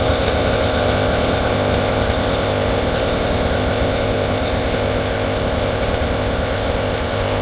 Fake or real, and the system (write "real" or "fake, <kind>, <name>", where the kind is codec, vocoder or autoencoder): fake, codec, ZipCodec